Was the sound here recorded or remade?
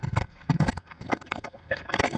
remade